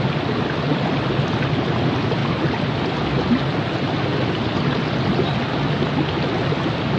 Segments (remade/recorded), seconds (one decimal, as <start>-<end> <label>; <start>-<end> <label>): 0.0-0.7 recorded; 0.7-1.5 remade; 1.5-2.2 recorded; 2.2-3.1 remade; 3.1-4.1 recorded; 4.1-4.6 remade; 4.6-7.0 recorded